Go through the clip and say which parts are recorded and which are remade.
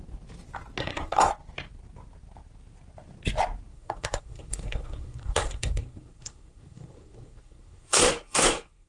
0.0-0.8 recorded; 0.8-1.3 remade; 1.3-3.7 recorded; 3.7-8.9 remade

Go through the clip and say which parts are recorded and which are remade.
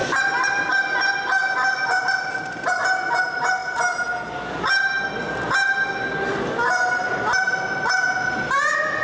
0.0-9.0 recorded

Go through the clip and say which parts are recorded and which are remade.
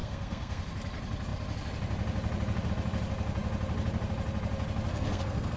0.0-0.6 remade; 0.6-4.9 recorded; 4.9-5.6 remade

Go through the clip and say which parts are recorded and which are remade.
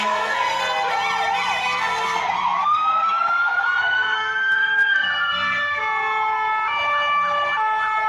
0.0-0.6 remade; 0.6-1.6 recorded; 1.6-5.8 remade; 5.8-8.1 recorded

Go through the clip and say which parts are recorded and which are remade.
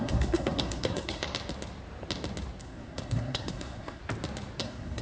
0.0-1.2 remade; 1.2-2.6 recorded; 2.6-4.0 remade; 4.0-4.6 recorded; 4.6-5.0 remade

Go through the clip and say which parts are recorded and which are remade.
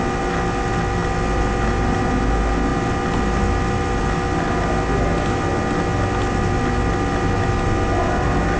0.0-8.6 recorded